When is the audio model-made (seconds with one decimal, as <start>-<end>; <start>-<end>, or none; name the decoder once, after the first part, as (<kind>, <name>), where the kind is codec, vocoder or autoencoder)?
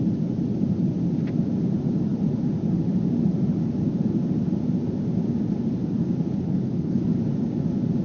6.3-7.0 (codec, HILCodec)